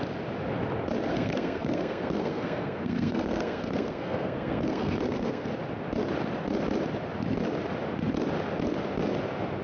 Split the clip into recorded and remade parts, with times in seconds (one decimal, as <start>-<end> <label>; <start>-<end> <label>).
0.0-1.1 recorded; 1.1-5.5 remade; 5.5-9.6 recorded